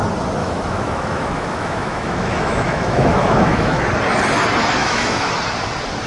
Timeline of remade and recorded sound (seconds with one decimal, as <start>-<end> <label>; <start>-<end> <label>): 0.0-0.4 recorded; 0.4-3.8 remade; 3.8-4.8 recorded; 4.8-5.3 remade; 5.3-6.1 recorded